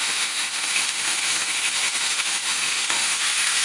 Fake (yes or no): yes